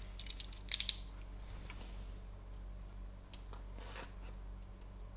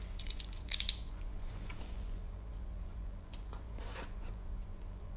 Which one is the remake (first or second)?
second